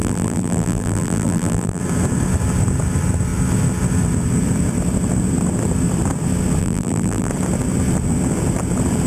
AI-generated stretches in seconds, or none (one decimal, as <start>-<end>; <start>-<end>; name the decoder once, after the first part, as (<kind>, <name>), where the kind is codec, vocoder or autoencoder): 0.0-1.8 (vocoder, BigVGAN v2); 6.6-7.3